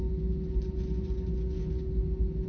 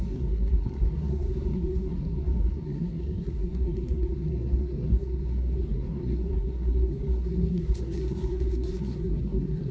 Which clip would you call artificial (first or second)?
second